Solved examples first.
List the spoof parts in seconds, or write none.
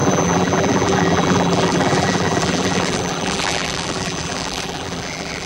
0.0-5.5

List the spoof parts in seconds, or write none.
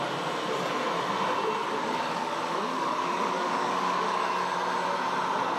1.6-4.2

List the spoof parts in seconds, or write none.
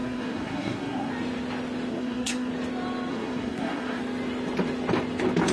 0.0-1.1; 1.9-2.5; 3.1-4.0